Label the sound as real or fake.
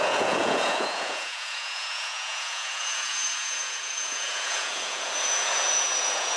fake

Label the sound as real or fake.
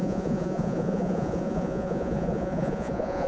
fake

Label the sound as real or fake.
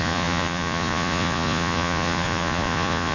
fake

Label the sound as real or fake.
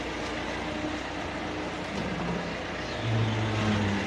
real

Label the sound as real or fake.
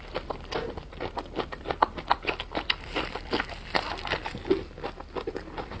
real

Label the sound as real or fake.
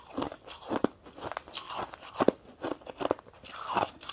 real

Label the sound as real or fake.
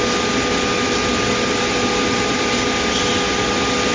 real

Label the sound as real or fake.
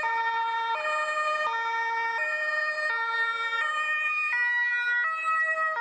real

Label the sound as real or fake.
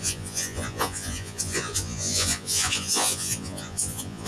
fake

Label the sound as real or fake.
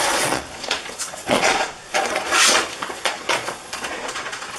fake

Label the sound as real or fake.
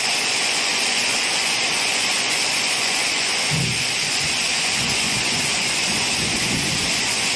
fake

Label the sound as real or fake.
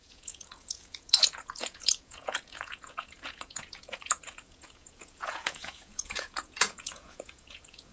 fake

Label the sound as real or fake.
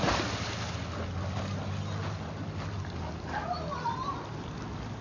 real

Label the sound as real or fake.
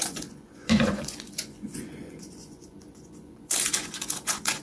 fake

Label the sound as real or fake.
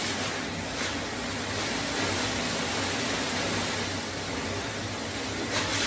real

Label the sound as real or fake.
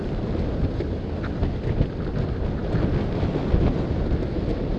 real